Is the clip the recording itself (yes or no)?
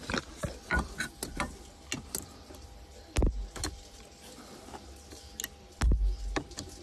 yes